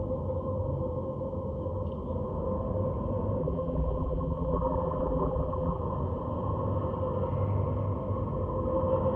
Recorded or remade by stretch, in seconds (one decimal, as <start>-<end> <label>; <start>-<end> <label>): 0.0-3.4 recorded; 3.4-5.8 remade; 5.8-9.2 recorded